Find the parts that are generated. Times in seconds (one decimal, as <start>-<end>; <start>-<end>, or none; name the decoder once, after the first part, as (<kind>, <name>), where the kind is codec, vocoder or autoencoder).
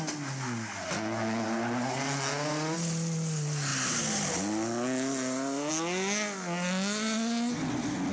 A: none